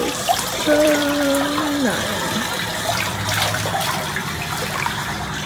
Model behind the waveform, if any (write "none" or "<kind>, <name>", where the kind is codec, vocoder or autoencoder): vocoder, BigVGAN v2